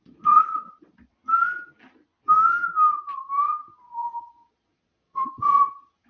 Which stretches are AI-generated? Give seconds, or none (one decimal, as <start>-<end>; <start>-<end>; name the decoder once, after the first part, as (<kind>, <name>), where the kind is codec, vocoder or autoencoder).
0.0-1.1 (vocoder, Vocos); 3.8-6.1

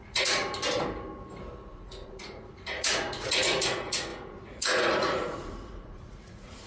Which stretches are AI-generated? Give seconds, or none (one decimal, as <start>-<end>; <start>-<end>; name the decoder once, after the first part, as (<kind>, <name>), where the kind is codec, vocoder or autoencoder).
0.0-0.4 (vocoder, Vocos); 1.7-6.7